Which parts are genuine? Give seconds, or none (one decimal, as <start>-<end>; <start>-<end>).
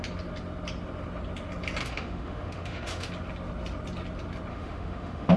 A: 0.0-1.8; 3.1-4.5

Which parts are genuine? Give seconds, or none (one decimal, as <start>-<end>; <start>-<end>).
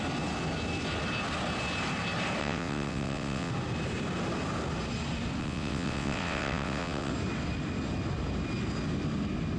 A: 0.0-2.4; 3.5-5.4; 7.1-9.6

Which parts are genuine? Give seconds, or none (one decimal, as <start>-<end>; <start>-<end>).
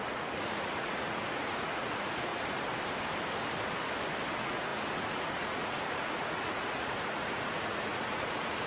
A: 2.3-4.3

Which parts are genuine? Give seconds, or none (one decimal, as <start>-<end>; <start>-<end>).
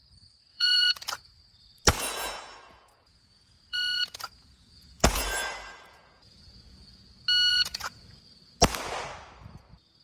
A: 0.0-0.5; 1.2-1.9; 7.0-7.5; 8.2-10.0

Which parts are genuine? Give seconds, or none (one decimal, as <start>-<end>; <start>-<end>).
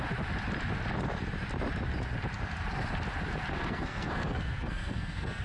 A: 0.0-3.5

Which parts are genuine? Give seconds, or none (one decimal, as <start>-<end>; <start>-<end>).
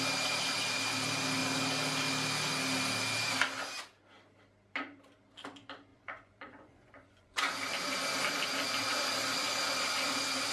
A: 0.0-5.9; 7.5-10.5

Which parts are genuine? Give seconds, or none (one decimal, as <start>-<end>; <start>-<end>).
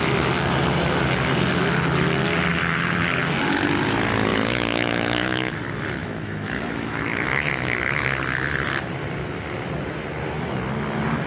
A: 0.0-2.5; 3.2-4.3; 5.6-6.0; 8.2-11.3